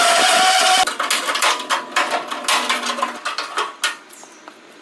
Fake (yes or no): no